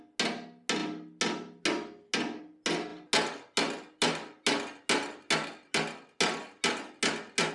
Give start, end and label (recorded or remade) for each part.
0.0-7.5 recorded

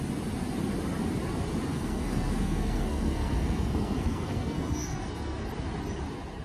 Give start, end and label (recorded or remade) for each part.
0.0-1.7 recorded; 1.7-5.5 remade; 5.5-6.4 recorded

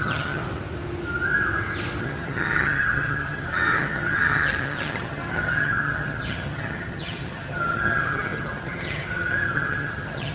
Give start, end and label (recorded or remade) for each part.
0.0-0.4 remade; 0.4-2.0 recorded; 2.0-10.3 remade

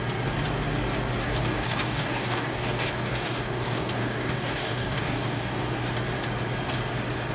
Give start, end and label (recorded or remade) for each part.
0.0-1.2 recorded; 1.2-5.6 remade; 5.6-7.3 recorded

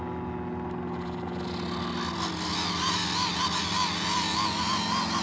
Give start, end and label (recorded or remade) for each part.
0.0-5.2 recorded